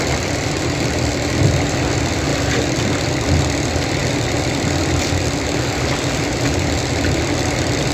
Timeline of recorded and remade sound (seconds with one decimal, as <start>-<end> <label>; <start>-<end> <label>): 0.0-2.3 remade; 2.3-3.2 recorded; 3.2-7.9 remade